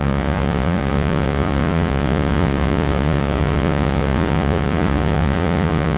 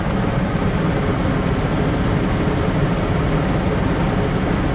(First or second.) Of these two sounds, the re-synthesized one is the first